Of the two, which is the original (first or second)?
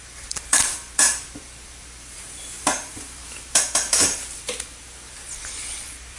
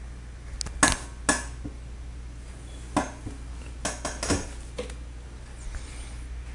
second